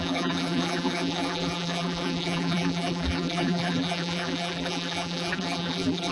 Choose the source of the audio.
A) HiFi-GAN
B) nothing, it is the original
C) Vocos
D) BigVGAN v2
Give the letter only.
D